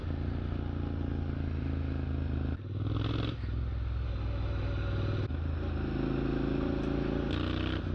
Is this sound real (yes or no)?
yes